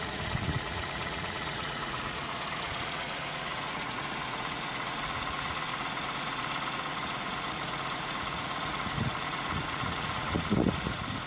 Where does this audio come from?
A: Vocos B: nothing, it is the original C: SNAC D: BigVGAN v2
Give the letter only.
A